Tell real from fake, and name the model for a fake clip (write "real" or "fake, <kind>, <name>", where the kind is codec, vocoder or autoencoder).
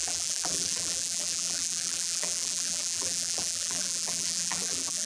fake, vocoder, BigVGAN v2